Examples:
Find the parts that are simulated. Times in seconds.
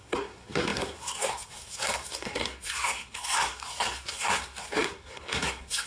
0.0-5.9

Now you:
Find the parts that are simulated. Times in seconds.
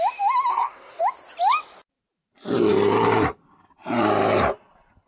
0.5-1.0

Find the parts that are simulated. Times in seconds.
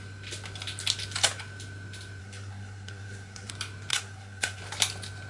2.2-3.5; 3.9-4.6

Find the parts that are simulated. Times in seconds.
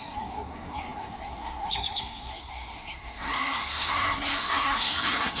0.0-5.4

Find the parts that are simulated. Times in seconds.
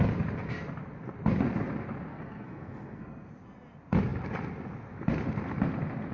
2.1-3.3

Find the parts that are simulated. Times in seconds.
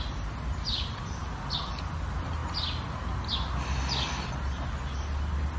none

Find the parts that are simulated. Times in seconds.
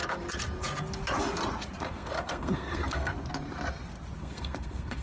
1.8-3.1; 4.2-5.0